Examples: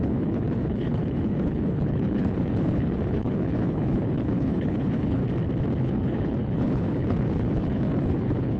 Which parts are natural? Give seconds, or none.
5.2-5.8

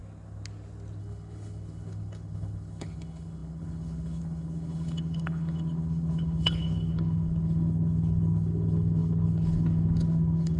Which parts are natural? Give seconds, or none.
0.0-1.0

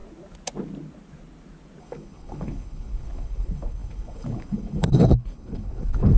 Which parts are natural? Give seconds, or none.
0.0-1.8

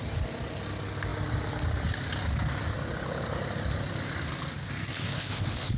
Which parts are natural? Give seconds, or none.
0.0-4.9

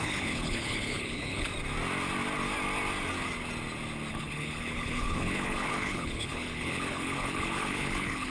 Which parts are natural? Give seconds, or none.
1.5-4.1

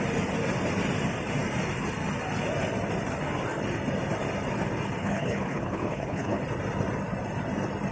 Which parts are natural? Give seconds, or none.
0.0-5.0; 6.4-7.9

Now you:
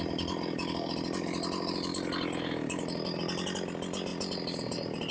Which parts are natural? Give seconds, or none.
0.0-5.1